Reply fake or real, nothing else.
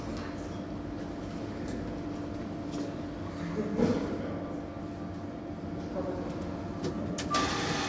real